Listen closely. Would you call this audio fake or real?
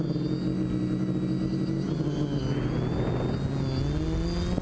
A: real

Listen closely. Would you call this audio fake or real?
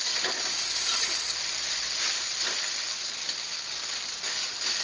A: real